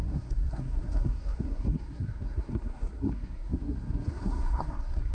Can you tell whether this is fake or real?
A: fake